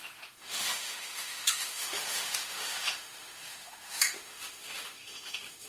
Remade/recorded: remade